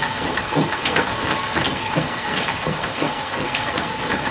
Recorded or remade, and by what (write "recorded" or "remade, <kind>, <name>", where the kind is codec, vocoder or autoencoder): remade, codec, SNAC